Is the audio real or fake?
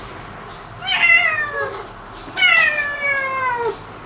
real